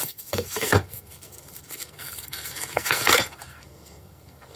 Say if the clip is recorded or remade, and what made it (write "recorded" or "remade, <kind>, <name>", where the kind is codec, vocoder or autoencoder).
remade, codec, SNAC